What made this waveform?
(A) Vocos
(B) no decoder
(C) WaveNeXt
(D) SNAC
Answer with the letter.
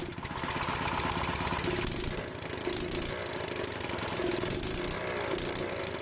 B